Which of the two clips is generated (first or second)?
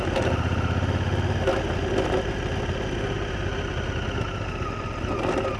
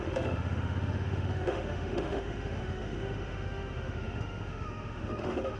second